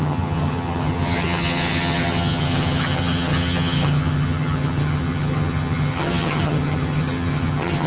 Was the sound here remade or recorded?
remade